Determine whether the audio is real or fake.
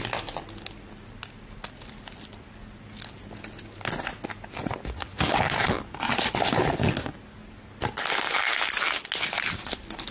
real